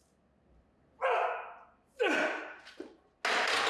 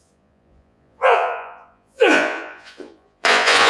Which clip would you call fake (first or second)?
second